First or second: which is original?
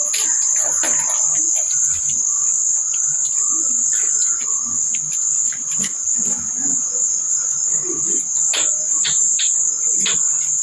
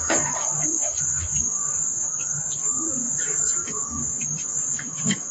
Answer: first